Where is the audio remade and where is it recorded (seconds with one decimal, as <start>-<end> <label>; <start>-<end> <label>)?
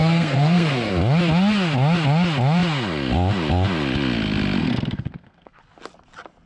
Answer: 0.0-0.9 remade; 0.9-4.6 recorded; 4.6-5.6 remade; 5.6-6.5 recorded